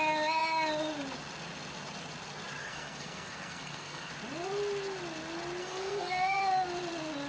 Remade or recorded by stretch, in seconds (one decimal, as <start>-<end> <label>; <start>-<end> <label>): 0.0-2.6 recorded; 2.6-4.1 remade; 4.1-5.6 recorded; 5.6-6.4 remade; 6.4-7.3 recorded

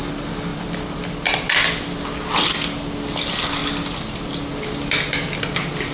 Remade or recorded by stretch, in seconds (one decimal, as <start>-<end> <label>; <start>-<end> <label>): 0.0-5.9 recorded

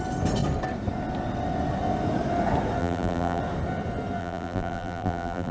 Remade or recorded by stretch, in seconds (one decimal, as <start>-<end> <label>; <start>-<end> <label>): 0.0-2.8 recorded; 2.8-3.4 remade; 3.4-4.2 recorded; 4.2-5.5 remade